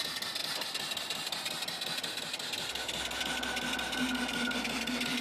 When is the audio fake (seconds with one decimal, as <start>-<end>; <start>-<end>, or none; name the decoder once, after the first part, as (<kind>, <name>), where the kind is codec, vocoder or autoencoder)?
none